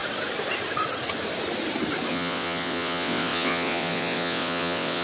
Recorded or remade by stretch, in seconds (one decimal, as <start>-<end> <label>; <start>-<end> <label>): 0.0-2.1 recorded; 2.1-5.0 remade